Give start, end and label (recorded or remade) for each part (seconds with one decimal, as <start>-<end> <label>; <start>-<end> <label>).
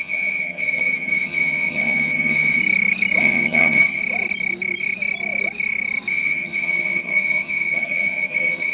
0.0-2.6 remade; 2.6-3.2 recorded; 3.2-4.0 remade; 4.0-6.1 recorded; 6.1-8.7 remade